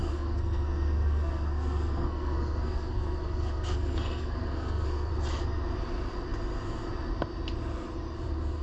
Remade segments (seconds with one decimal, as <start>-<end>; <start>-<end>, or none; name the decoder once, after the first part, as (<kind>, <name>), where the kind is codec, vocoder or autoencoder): 0.0-5.1 (codec, SNAC)